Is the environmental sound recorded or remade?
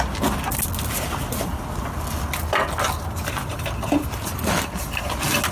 recorded